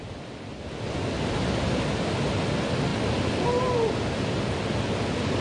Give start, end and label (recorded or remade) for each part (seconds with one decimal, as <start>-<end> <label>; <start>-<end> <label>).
0.0-5.4 recorded